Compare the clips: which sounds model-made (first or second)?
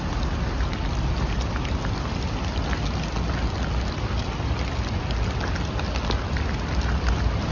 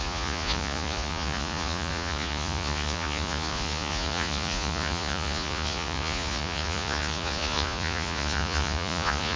second